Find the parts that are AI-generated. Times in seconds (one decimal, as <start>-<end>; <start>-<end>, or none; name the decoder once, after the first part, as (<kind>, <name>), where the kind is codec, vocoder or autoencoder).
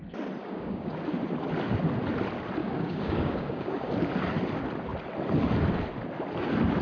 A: 0.4-1.0 (codec, DAC); 2.6-3.9